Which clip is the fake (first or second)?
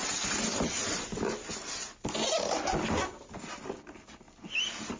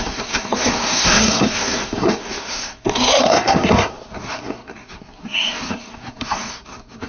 second